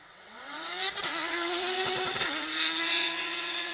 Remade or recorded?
remade